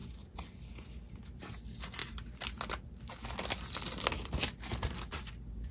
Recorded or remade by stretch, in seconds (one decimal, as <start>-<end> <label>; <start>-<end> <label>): 0.0-5.7 recorded